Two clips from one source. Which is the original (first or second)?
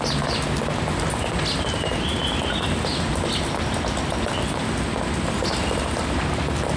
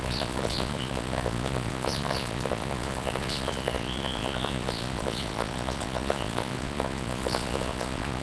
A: first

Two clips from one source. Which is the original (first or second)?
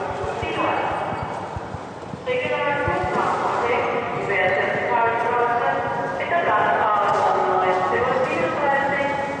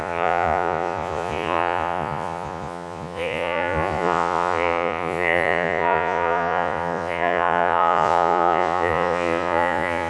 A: first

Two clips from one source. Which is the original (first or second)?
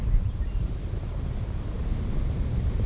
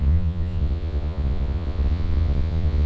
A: first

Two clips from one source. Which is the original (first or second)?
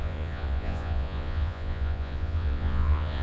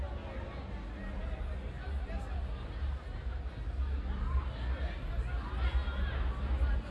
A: second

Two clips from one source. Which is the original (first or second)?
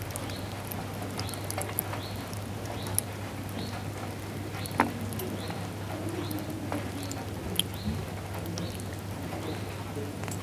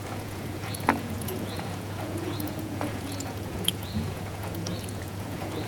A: first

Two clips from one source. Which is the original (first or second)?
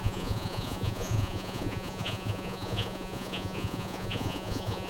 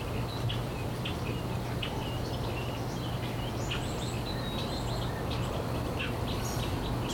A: second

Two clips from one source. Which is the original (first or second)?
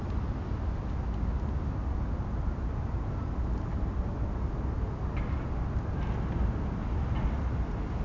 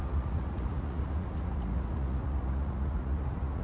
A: first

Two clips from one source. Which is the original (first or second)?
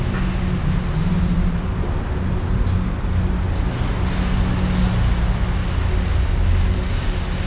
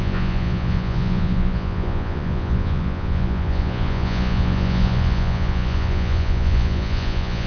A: first